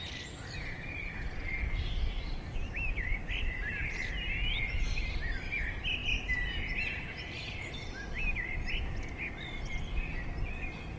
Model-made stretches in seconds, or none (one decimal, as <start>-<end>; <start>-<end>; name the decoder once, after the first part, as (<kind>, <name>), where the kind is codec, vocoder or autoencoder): none